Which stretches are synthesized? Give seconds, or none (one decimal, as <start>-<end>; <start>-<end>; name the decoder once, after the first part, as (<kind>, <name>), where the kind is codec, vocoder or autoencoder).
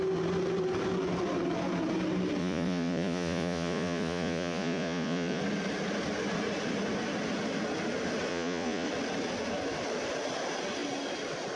2.4-5.4 (vocoder, Vocos); 8.3-8.9